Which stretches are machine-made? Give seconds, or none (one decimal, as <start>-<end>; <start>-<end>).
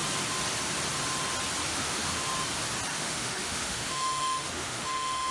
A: 1.7-2.3; 2.9-5.3